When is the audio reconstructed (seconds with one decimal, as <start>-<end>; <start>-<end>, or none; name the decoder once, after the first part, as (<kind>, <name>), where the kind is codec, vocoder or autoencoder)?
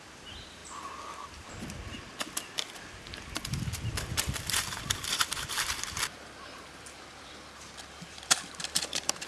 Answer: 0.0-9.3 (vocoder, BigVGAN v2)